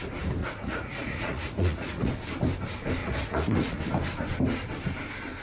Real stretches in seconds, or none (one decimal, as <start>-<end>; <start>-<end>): 0.0-0.4; 2.1-3.0; 3.8-5.4